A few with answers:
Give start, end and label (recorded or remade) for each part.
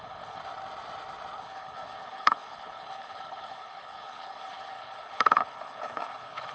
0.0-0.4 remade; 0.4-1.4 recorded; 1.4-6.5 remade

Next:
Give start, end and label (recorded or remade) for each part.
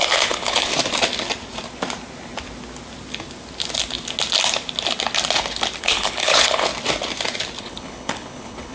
0.0-0.7 remade; 0.7-5.8 recorded; 5.8-6.7 remade; 6.7-7.6 recorded; 7.6-8.7 remade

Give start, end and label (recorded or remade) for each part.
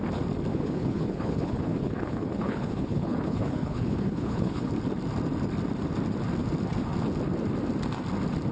0.0-0.5 recorded; 0.5-4.7 remade; 4.7-8.5 recorded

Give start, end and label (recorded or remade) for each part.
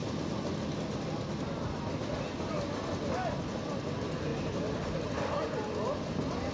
0.0-6.5 recorded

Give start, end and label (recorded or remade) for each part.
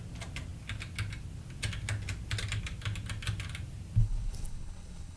0.0-4.0 recorded; 4.0-5.2 remade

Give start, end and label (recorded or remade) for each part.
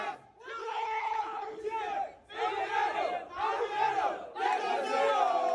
0.0-0.6 recorded; 0.6-1.6 remade; 1.6-5.5 recorded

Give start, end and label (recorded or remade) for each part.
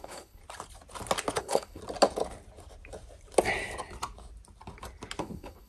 0.0-0.4 remade; 0.4-1.4 recorded; 1.4-1.8 remade; 1.8-5.2 recorded; 5.2-5.7 remade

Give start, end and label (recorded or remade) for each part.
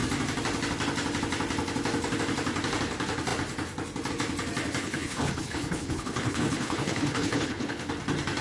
0.0-4.8 recorded; 4.8-7.9 remade; 7.9-8.4 recorded